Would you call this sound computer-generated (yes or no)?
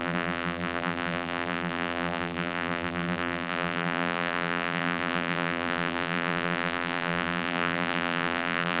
yes